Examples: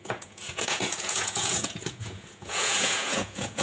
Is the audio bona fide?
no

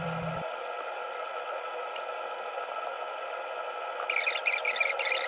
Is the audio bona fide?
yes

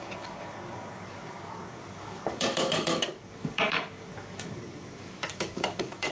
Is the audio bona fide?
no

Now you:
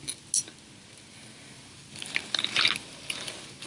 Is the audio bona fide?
yes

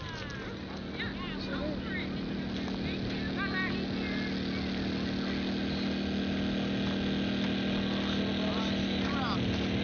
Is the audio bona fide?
yes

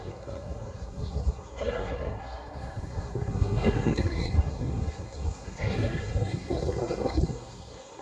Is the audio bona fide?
no